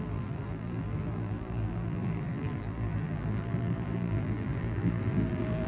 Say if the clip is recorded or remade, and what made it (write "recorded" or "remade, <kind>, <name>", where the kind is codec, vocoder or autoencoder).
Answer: remade, vocoder, BigVGAN v2